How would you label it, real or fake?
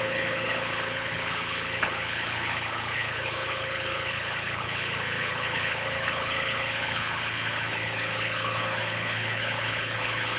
fake